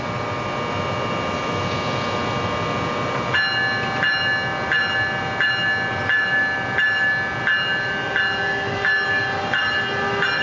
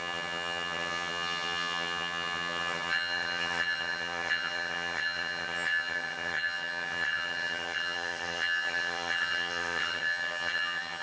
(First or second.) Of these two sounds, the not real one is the second